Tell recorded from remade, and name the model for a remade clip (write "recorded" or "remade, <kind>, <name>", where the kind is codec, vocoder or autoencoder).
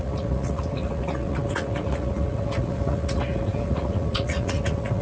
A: remade, vocoder, Vocos